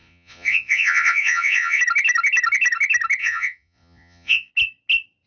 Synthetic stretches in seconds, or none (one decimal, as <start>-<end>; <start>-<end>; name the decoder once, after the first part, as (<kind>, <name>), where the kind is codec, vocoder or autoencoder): 0.0-1.8 (vocoder, Vocos); 3.2-4.5